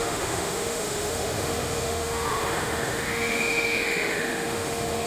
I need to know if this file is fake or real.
fake